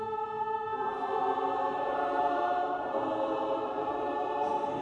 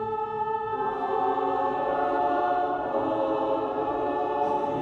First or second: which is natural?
second